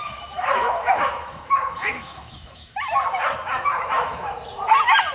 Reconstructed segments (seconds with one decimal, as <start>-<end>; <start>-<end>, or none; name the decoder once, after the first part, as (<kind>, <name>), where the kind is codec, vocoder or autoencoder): 0.0-2.9 (autoencoder, DAC-VAE); 3.7-4.3